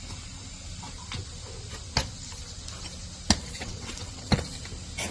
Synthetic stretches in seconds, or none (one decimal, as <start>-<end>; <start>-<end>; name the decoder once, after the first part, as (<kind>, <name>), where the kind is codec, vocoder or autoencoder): 3.4-4.4 (vocoder, WaveNeXt)